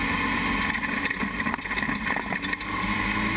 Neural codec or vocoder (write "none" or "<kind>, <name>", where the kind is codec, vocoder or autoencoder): none